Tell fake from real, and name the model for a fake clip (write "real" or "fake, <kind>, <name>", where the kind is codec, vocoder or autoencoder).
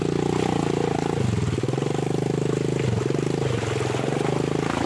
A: real